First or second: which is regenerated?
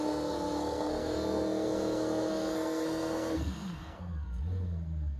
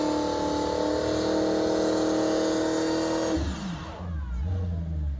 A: first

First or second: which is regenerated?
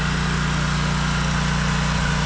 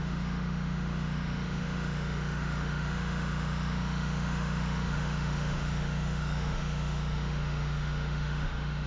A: second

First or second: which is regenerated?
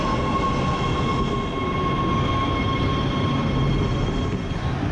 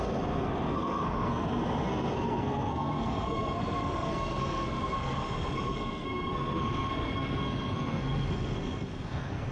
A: second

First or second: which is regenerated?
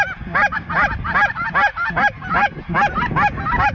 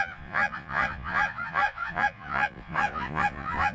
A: second